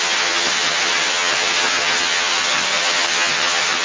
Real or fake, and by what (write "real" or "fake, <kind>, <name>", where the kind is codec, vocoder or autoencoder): fake, vocoder, HiFi-GAN